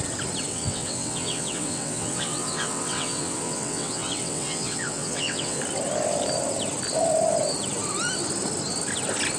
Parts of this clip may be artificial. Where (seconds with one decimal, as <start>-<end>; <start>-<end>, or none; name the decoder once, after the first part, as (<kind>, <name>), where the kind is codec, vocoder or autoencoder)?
0.5-5.6 (vocoder, WaveNeXt)

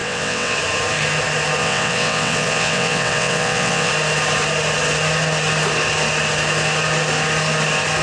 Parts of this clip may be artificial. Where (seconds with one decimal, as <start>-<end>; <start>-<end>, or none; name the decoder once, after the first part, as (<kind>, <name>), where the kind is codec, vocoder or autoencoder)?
0.0-0.6 (vocoder, WaveNeXt); 1.6-3.9

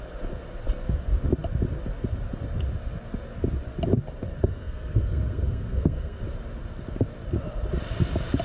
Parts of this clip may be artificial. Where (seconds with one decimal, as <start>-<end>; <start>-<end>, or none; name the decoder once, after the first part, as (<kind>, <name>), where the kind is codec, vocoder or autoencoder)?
4.4-6.2 (codec, SNAC)

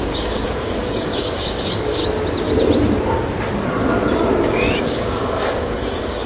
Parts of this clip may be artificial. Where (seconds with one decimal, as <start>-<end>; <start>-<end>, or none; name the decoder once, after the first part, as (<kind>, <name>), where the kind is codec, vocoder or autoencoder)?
0.0-2.0 (codec, DAC); 4.5-6.3

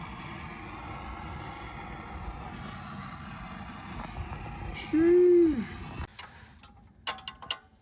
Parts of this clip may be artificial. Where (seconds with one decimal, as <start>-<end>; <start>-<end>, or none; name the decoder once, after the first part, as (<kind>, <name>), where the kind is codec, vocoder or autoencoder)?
none